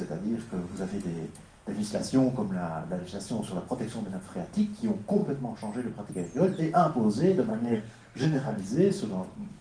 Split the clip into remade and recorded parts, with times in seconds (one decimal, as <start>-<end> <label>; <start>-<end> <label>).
0.0-7.5 recorded; 7.5-8.6 remade; 8.6-9.6 recorded